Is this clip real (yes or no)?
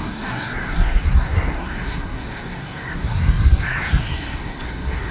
no